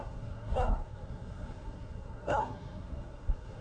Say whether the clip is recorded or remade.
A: remade